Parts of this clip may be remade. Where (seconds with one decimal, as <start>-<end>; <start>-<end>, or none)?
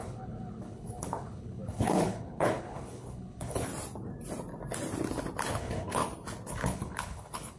0.0-3.7; 5.5-6.0; 6.5-7.6